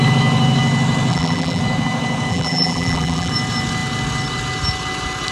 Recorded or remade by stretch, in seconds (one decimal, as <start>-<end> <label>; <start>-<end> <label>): 0.0-1.1 recorded; 1.1-1.6 remade; 1.6-2.3 recorded; 2.3-3.3 remade; 3.3-5.3 recorded